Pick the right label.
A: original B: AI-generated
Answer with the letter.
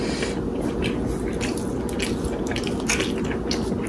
A